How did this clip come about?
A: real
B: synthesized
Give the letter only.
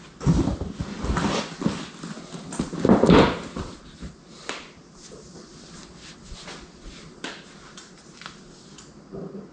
A